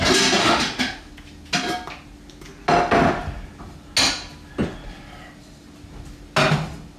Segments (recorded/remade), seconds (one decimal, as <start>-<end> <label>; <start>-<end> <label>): 0.0-0.4 recorded; 0.4-1.1 remade; 1.1-7.0 recorded